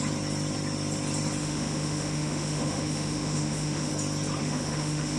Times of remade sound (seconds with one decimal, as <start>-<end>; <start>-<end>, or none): 1.4-3.9; 4.4-5.2